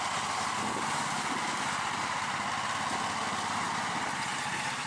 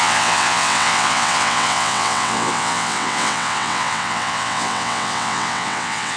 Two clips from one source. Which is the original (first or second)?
first